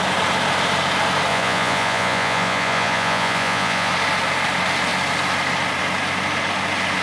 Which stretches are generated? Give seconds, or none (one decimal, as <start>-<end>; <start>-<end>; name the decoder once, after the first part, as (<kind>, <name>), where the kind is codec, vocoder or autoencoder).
1.3-3.9 (vocoder, Vocos)